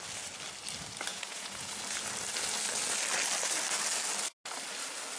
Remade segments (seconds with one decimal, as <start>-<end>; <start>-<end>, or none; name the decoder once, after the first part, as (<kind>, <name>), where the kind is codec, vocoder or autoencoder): 1.1-1.7 (vocoder, Vocos)